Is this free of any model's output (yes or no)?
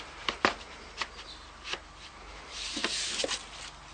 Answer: yes